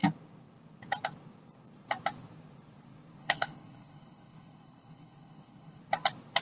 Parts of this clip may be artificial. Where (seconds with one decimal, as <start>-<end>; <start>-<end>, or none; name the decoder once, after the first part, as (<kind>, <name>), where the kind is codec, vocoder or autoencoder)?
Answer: 3.2-5.8 (codec, HILCodec)